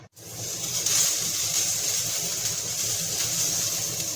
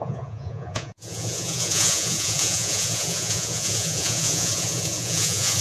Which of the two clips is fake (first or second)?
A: second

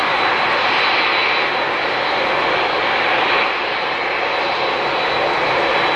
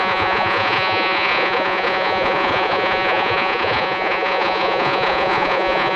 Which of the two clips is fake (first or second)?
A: second